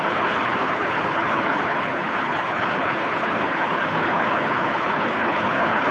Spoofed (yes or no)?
yes